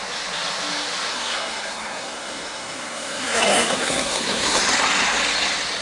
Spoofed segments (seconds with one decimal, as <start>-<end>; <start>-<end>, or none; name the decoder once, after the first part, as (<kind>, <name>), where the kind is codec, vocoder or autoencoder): 1.1-4.6 (codec, SNAC)